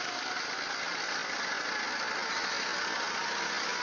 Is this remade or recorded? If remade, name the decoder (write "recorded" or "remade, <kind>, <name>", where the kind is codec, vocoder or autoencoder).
recorded